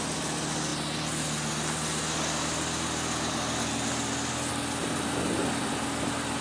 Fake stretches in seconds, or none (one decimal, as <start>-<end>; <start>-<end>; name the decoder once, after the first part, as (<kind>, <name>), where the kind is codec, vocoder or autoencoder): none